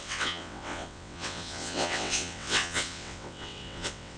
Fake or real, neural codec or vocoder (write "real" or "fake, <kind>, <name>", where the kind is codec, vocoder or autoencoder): fake, vocoder, WaveNeXt